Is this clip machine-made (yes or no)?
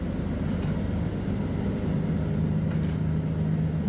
no